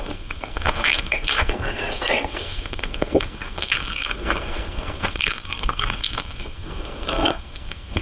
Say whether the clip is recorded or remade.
remade